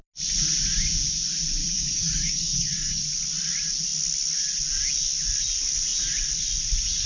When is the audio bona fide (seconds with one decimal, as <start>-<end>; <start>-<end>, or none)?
0.0-1.6; 3.0-7.1